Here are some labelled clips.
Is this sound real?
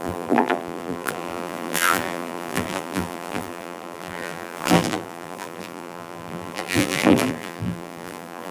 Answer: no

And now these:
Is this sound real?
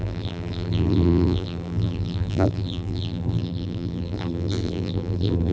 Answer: no